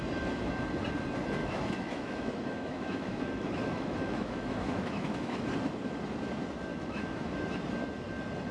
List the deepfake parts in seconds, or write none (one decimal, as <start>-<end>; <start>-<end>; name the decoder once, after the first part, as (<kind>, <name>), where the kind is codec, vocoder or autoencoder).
1.4-5.4 (autoencoder, DAC-VAE); 6.7-7.3

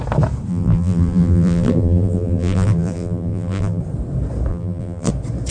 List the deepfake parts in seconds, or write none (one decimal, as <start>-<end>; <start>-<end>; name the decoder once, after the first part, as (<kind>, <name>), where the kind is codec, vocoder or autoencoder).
0.5-3.8 (vocoder, BigVGAN v2); 4.5-5.1

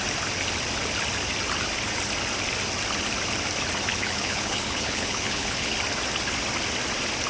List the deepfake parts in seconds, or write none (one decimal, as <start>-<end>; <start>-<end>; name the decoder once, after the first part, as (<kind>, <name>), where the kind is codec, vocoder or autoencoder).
3.9-5.7 (codec, HILCodec)

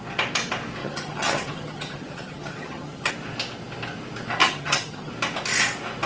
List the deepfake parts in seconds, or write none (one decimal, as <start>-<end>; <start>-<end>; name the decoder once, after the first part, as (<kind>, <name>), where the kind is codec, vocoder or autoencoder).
0.8-3.1 (vocoder, HiFi-GAN); 4.4-5.1

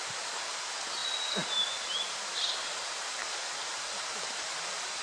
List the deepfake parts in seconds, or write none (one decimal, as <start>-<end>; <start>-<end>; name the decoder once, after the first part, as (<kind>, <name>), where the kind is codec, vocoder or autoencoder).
none

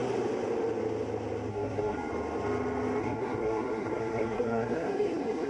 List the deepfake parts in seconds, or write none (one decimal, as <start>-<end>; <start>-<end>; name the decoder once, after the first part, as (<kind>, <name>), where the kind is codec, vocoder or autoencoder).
1.5-2.1 (codec, SNAC); 3.0-5.5

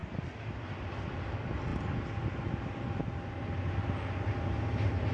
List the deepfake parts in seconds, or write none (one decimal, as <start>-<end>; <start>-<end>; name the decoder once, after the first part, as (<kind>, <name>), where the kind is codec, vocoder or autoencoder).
0.0-0.5 (vocoder, BigVGAN v2)